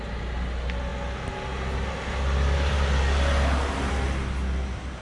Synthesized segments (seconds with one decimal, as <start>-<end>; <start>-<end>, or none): none